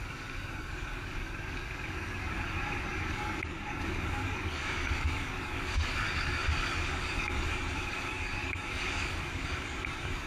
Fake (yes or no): yes